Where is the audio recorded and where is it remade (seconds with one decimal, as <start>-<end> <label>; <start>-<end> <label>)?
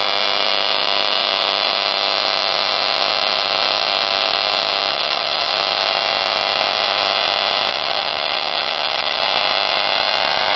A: 0.0-4.9 recorded; 4.9-5.5 remade; 5.5-7.7 recorded; 7.7-9.2 remade; 9.2-10.6 recorded